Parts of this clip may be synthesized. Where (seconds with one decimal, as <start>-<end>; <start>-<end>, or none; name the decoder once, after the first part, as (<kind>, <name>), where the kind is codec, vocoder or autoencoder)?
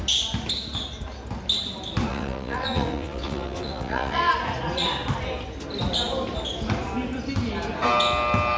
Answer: 2.1-4.3 (vocoder, WaveNeXt)